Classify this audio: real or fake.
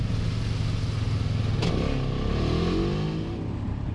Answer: real